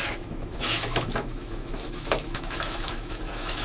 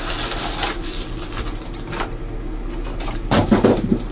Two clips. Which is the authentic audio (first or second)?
second